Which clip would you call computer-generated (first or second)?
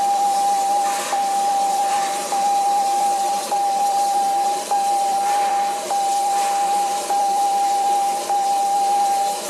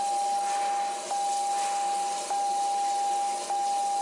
first